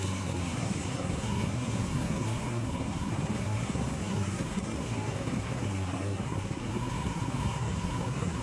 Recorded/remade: remade